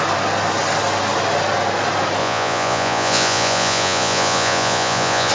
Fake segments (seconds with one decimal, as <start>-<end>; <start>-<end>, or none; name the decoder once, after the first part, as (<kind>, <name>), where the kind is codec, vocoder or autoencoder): 2.2-5.3 (vocoder, Vocos)